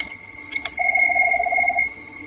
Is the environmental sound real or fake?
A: fake